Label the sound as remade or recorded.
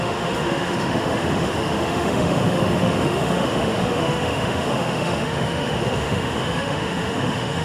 remade